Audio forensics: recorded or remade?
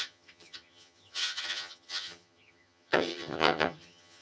remade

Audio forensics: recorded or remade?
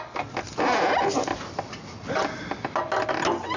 recorded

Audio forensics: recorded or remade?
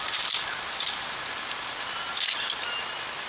recorded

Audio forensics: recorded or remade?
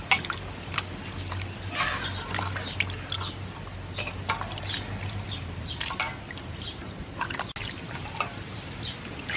recorded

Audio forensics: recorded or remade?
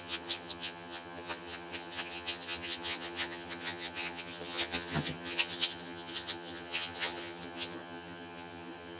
remade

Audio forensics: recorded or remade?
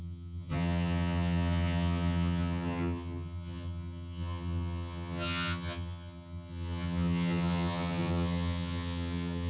remade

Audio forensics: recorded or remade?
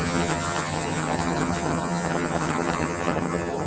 remade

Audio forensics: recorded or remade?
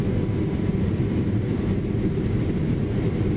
recorded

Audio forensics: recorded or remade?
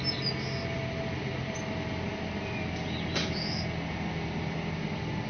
recorded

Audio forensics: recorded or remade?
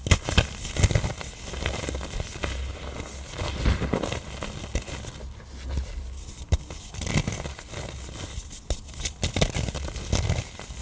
recorded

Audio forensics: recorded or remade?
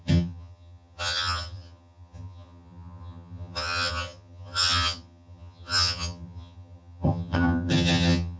remade